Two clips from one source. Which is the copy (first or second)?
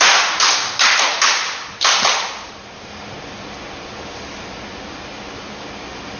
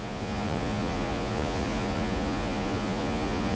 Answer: second